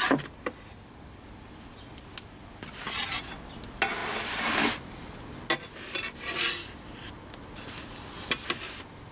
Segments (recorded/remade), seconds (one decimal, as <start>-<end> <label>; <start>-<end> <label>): 0.0-9.1 recorded